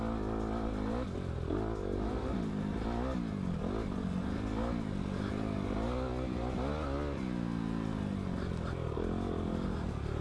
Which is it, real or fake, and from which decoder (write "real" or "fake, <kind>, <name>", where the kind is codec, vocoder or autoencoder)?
real